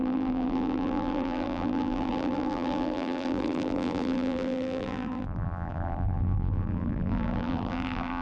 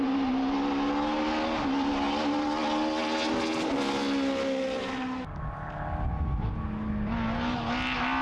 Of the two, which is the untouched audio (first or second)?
second